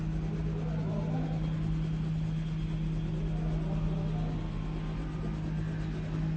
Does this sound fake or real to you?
real